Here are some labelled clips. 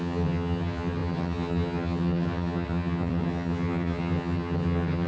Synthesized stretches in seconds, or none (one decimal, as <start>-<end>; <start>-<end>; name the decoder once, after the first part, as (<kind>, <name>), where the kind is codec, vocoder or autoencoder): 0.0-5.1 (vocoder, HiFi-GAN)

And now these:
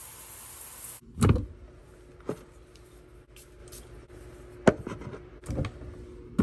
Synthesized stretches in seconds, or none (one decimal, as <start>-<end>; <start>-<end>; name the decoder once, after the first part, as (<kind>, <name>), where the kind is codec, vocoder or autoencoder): none

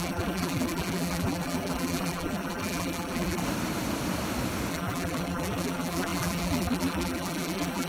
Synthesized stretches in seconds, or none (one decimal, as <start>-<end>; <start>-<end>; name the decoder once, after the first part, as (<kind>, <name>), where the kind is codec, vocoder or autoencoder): 0.0-3.4 (vocoder, BigVGAN v2); 4.7-7.9

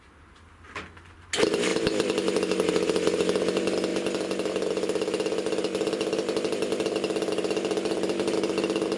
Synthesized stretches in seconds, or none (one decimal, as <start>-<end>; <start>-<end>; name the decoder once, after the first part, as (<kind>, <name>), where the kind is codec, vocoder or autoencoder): none

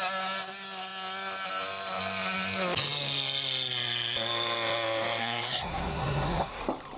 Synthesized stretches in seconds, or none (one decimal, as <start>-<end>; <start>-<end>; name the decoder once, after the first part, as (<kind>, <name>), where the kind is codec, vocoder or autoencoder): 5.2-6.6 (codec, SNAC)

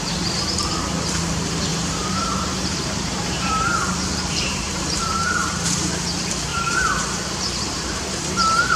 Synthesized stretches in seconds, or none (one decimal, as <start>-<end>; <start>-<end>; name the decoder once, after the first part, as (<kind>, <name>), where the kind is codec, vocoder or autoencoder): 1.7-5.9 (vocoder, BigVGAN v2); 6.5-8.8